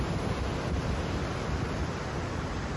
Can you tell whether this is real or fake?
real